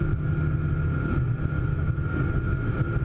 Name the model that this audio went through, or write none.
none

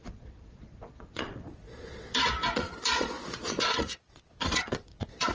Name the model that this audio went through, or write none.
vocoder, Vocos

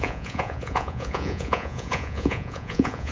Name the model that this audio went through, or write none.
vocoder, Vocos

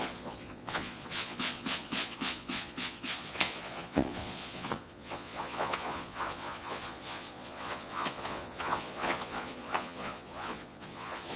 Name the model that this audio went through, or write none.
vocoder, Vocos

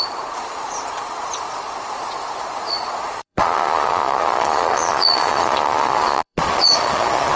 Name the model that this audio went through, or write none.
vocoder, Vocos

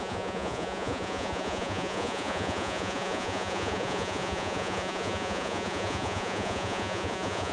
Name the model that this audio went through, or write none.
vocoder, Vocos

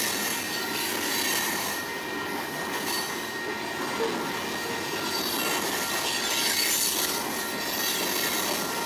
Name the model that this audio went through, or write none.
none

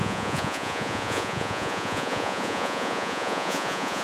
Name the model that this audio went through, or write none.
vocoder, Vocos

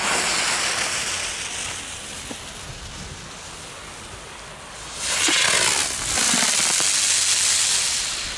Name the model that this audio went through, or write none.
none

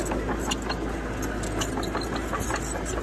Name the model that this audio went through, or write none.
none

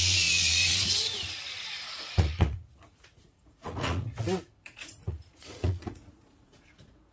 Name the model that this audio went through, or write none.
vocoder, Vocos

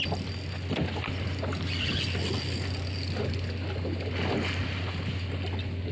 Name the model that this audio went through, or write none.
none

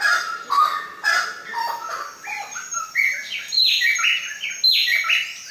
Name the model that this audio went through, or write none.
none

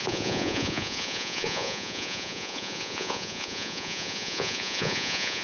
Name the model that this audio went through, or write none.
vocoder, Vocos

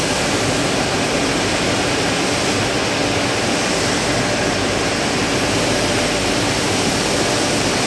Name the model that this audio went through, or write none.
none